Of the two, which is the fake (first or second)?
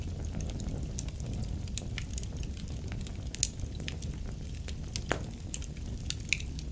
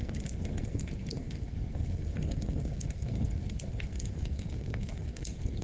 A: second